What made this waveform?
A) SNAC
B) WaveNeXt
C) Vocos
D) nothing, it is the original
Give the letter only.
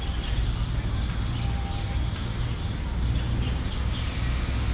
D